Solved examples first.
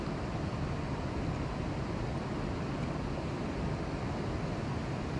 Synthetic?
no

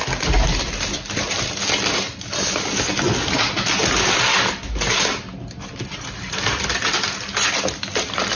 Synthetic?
no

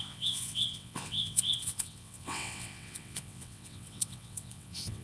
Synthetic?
yes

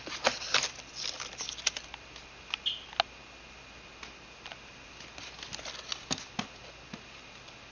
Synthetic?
no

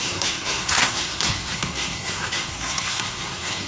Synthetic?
yes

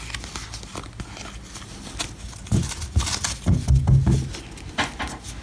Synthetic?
no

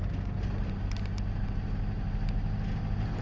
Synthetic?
no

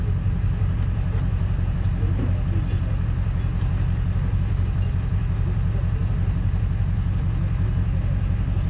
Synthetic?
no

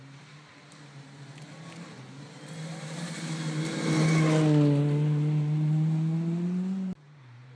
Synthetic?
no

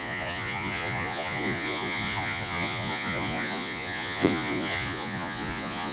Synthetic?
yes